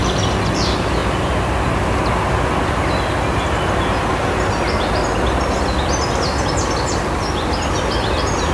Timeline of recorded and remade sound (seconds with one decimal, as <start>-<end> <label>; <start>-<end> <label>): 0.0-8.5 recorded

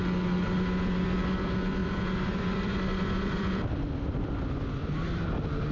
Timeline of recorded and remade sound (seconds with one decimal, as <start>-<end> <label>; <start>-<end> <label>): 0.0-1.8 recorded; 1.8-4.3 remade; 4.3-4.8 recorded; 4.8-5.7 remade

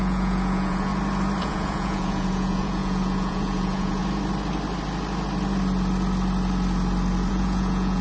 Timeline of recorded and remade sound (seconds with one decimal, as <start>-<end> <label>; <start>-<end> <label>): 0.0-0.9 remade; 0.9-1.4 recorded; 1.4-4.0 remade; 4.0-7.3 recorded; 7.3-8.0 remade

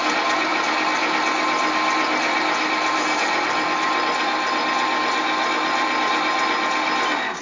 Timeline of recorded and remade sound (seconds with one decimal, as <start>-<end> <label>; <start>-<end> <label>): 0.0-7.4 recorded

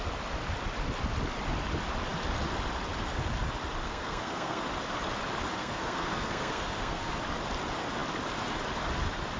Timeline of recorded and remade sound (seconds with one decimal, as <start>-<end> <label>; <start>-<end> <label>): 0.0-3.8 recorded; 3.8-4.7 remade; 4.7-5.6 recorded; 5.6-7.1 remade; 7.1-9.4 recorded